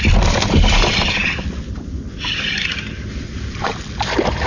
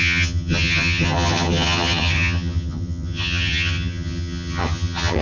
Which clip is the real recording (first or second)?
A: first